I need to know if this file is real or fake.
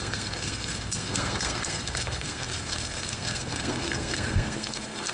fake